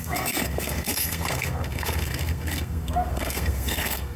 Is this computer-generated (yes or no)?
yes